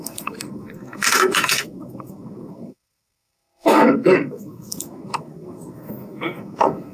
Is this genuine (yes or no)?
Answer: no